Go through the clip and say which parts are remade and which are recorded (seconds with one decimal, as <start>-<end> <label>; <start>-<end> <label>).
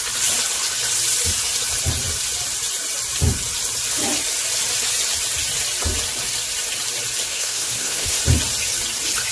0.0-7.3 recorded; 7.3-8.2 remade; 8.2-9.3 recorded